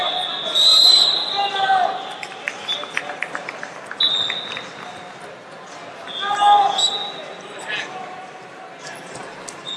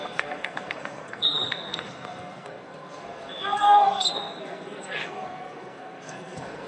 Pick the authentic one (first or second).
first